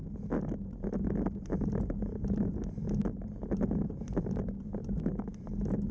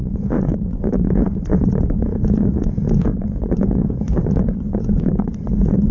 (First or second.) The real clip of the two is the first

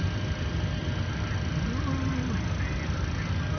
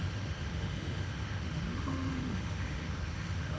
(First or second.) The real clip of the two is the first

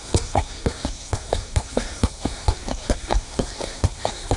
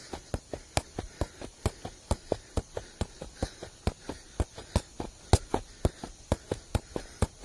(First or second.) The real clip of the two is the second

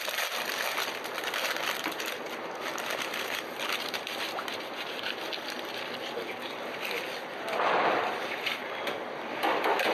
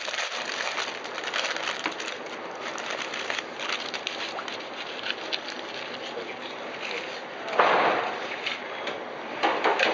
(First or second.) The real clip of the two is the second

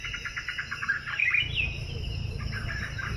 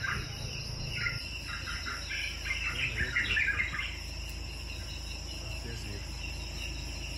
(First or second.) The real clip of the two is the second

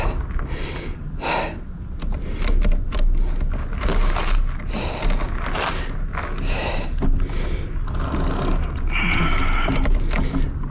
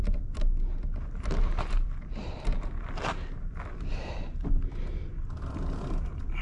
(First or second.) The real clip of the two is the first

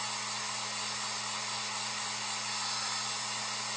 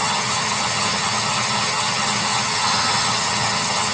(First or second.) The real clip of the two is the first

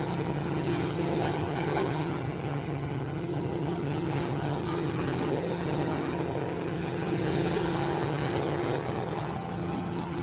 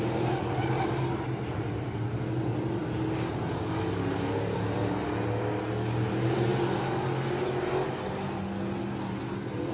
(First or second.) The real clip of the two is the second